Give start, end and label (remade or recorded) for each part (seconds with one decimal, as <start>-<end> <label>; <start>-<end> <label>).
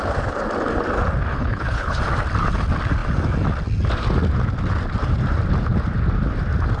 0.0-1.3 recorded; 1.3-2.0 remade; 2.0-6.8 recorded